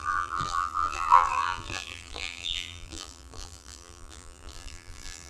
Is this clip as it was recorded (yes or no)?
no